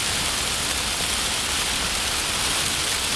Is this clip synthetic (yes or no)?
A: yes